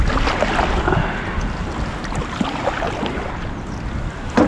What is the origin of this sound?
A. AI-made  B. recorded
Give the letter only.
B